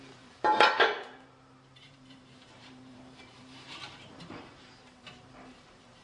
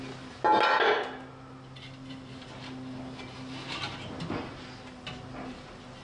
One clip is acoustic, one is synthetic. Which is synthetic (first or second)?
first